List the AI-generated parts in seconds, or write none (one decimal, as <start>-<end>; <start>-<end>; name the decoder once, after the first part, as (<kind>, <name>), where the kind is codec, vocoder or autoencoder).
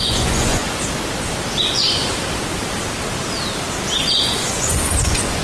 0.0-0.8 (vocoder, Vocos); 1.6-2.0; 4.0-5.4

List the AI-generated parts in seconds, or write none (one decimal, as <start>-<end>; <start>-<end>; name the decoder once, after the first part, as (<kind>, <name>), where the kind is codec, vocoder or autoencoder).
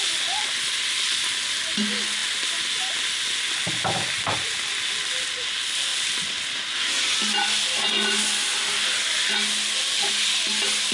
none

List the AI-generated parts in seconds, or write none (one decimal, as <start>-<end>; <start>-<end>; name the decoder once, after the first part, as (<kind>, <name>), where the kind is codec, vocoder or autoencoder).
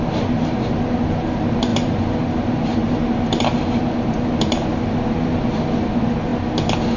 none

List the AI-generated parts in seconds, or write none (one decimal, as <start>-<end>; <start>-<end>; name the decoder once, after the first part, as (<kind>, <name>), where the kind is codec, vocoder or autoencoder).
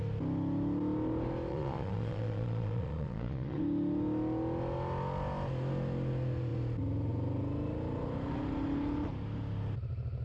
1.5-3.6 (vocoder, Vocos)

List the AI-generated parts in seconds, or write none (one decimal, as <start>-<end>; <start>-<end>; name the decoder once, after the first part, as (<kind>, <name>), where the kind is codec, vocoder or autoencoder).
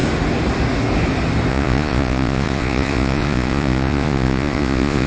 1.5-5.1 (vocoder, Vocos)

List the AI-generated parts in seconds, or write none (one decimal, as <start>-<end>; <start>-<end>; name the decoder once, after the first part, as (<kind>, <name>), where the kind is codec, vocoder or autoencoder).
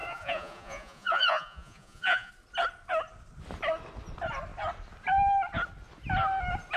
0.0-2.3 (vocoder, Vocos)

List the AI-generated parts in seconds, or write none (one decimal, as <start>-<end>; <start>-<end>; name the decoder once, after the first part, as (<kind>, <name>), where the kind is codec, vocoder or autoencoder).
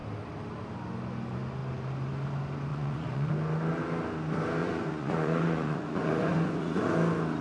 2.7-3.3 (vocoder, Vocos); 4.6-6.9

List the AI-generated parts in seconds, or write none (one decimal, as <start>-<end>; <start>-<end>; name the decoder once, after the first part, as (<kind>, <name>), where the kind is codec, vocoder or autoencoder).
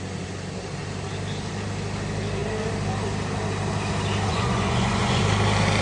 4.3-5.2 (vocoder, Vocos)